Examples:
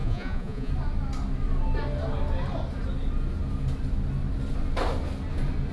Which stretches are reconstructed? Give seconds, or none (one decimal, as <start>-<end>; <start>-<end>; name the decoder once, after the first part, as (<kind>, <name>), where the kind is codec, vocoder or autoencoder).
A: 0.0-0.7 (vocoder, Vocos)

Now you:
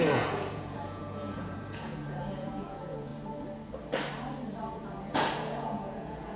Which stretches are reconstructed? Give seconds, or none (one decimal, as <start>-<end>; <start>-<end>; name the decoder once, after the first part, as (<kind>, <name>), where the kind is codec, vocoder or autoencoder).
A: 0.0-3.1 (vocoder, Vocos); 4.7-6.4

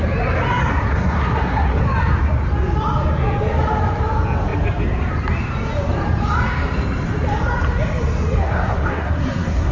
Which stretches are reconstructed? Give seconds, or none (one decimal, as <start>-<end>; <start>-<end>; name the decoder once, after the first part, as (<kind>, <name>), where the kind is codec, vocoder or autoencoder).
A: 0.7-1.8 (codec, SNAC); 8.4-9.7